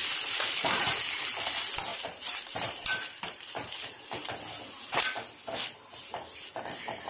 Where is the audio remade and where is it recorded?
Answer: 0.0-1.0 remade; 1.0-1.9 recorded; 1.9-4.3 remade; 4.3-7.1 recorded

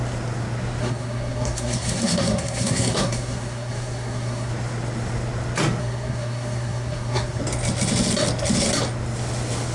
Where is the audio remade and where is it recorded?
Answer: 0.0-0.8 recorded; 0.8-4.5 remade; 4.5-5.8 recorded; 5.8-7.4 remade; 7.4-9.7 recorded